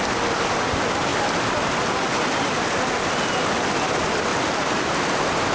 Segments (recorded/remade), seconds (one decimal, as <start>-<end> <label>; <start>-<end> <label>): 0.0-1.1 recorded; 1.1-3.5 remade; 3.5-4.3 recorded; 4.3-5.1 remade; 5.1-5.5 recorded

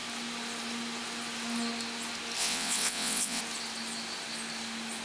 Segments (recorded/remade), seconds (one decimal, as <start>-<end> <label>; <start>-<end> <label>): 0.0-2.4 recorded; 2.4-3.4 remade; 3.4-5.0 recorded